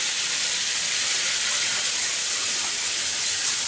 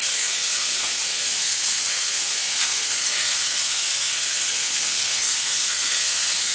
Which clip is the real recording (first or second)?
first